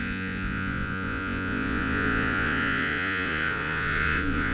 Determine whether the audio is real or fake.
fake